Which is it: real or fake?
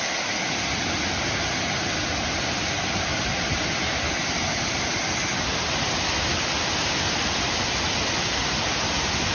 real